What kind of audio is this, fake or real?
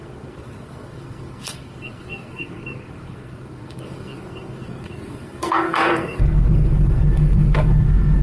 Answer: fake